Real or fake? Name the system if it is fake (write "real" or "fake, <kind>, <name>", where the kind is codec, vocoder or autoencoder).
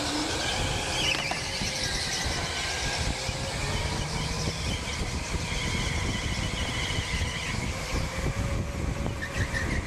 real